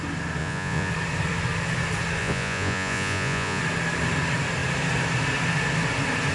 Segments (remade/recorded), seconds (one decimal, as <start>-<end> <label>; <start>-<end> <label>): 0.0-0.4 recorded; 0.4-0.9 remade; 0.9-2.2 recorded; 2.2-3.6 remade; 3.6-6.3 recorded